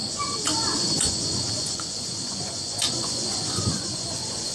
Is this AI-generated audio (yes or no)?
yes